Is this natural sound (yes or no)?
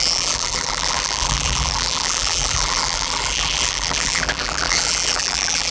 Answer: no